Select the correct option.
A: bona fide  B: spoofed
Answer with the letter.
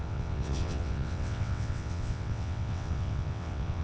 B